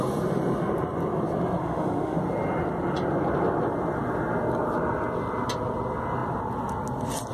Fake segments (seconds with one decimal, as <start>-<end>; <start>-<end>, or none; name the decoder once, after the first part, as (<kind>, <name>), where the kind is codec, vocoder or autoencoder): 1.6-2.2 (autoencoder, DAC-VAE)